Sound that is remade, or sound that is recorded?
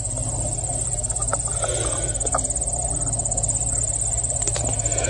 remade